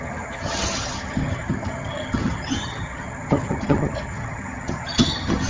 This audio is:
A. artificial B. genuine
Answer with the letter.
A